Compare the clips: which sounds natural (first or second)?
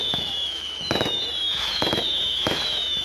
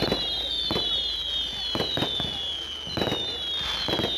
second